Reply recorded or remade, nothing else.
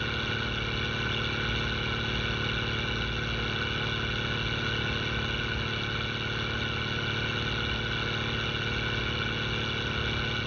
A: recorded